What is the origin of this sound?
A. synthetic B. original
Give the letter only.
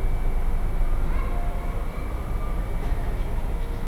B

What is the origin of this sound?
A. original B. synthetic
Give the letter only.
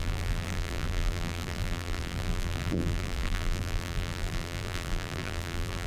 B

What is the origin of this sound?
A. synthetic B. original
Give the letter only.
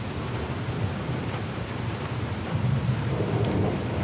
A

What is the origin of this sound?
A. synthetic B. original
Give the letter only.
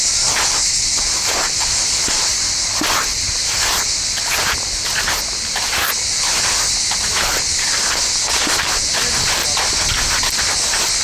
B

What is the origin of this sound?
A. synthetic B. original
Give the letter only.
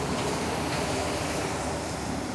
A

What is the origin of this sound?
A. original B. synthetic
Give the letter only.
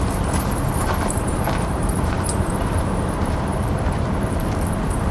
B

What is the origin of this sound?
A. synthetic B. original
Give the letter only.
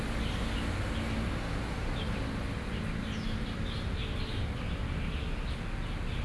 B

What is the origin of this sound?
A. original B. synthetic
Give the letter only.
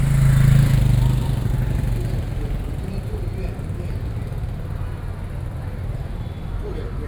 A